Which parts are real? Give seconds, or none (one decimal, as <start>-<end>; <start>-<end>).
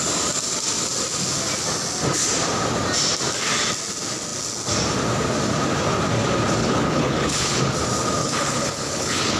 0.0-6.6; 7.6-8.2